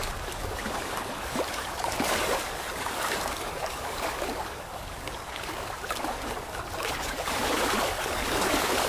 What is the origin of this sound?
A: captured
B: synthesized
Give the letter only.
B